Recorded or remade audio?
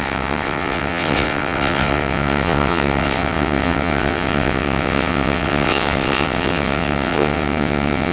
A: remade